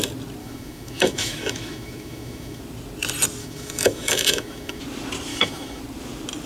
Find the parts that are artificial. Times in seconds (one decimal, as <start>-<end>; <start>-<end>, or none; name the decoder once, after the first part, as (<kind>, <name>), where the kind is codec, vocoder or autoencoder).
0.4-2.6 (autoencoder, DAC-VAE); 3.4-4.8; 5.3-5.8